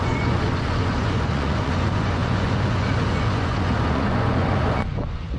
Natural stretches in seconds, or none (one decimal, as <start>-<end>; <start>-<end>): none